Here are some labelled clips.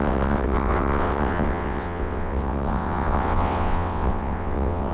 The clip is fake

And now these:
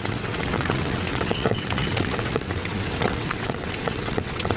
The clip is fake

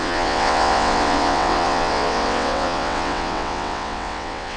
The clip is fake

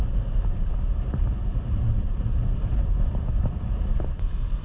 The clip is real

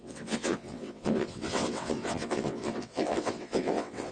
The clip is fake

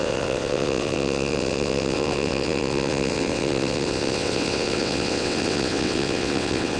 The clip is fake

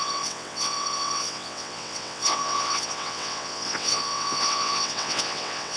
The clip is fake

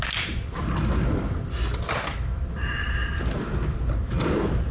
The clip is real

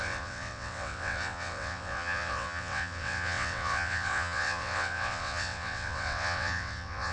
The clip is fake